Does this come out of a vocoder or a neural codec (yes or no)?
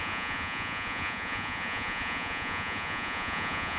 yes